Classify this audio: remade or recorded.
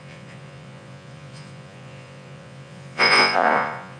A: remade